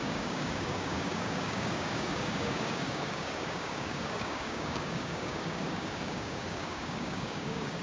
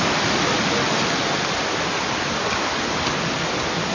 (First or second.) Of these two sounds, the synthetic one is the first